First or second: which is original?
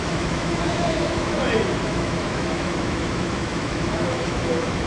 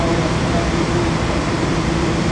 second